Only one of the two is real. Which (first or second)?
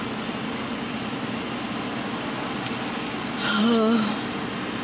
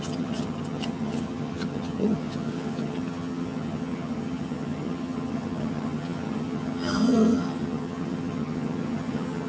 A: first